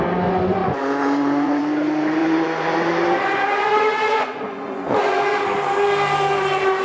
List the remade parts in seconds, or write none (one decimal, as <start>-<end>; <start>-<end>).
0.6-1.6; 2.2-5.4